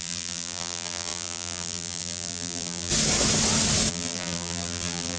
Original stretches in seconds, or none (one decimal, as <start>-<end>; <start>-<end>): 2.9-3.9